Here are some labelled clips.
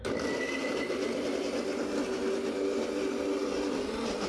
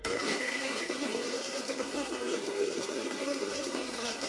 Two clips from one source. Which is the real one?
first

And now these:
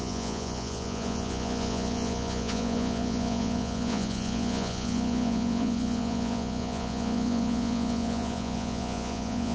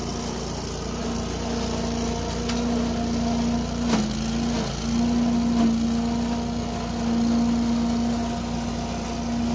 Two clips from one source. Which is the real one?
second